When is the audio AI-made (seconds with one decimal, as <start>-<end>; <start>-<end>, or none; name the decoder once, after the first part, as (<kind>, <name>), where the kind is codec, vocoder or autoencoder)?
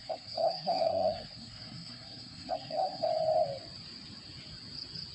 0.0-3.1 (codec, SNAC)